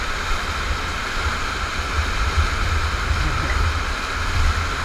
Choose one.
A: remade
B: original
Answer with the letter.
B